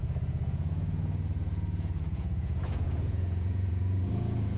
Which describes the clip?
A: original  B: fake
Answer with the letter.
B